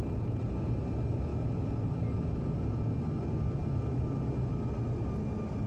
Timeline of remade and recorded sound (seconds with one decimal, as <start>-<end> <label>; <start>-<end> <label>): 0.0-5.7 recorded